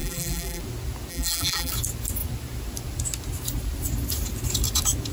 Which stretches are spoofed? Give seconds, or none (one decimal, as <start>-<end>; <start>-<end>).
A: 0.0-0.6; 1.1-1.7